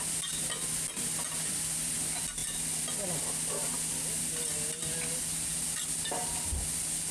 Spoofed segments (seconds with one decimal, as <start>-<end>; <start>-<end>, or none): none